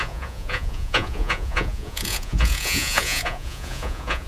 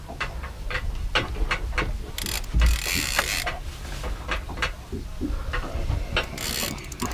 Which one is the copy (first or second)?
first